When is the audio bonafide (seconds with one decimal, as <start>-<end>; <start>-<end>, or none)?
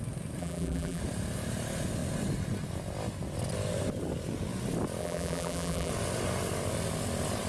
0.0-0.4; 1.0-5.0; 5.9-7.5